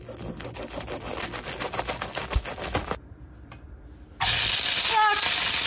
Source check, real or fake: real